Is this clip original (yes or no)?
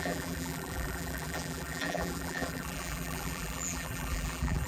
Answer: no